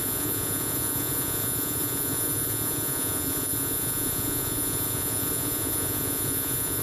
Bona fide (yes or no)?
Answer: no